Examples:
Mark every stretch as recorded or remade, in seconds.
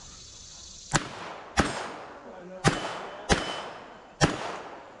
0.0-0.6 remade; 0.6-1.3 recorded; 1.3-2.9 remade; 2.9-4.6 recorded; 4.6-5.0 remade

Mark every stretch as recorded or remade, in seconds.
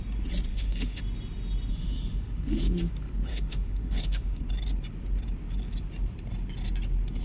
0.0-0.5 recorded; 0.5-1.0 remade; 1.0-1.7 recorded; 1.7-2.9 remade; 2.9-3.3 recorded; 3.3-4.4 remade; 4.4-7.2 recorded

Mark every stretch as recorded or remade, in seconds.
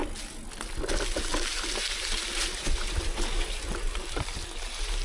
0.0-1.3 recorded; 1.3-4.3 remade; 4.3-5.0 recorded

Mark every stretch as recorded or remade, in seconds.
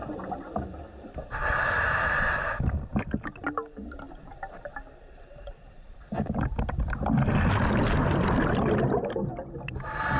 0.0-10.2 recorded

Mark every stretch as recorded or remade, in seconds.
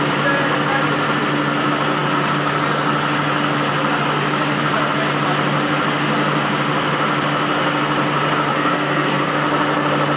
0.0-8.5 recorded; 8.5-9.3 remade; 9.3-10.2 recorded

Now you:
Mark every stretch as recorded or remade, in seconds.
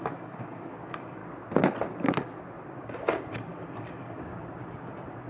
0.0-1.2 remade; 1.2-2.8 recorded; 2.8-4.3 remade; 4.3-5.3 recorded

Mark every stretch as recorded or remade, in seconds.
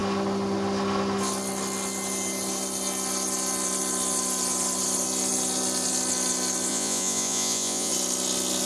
0.0-6.7 recorded; 6.7-7.9 remade; 7.9-8.7 recorded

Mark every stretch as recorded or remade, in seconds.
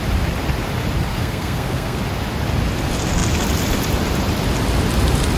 0.0-1.1 recorded; 1.1-2.0 remade; 2.0-5.4 recorded